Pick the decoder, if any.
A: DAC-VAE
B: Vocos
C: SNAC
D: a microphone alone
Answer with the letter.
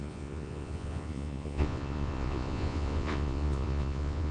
B